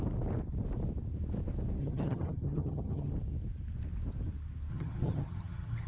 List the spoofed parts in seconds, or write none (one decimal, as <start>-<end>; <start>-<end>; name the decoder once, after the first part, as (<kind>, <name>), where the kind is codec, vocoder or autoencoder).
1.8-3.1 (vocoder, HiFi-GAN); 4.7-5.9